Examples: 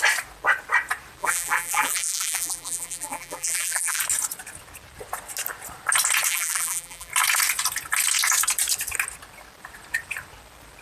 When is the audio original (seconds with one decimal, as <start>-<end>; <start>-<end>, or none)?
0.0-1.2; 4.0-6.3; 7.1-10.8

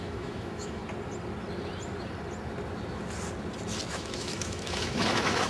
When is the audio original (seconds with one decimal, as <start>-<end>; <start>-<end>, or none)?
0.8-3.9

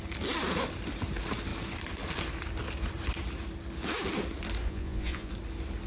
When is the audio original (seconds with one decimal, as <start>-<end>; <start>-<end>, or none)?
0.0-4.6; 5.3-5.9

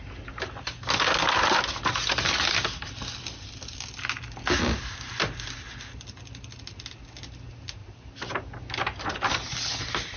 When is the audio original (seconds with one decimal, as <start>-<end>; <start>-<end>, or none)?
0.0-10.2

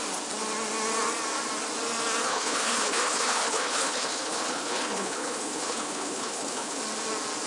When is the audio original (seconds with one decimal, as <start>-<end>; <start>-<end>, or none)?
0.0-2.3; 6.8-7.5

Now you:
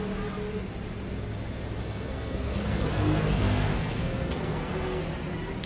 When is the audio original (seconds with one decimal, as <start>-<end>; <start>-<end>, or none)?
0.0-1.8; 5.0-5.7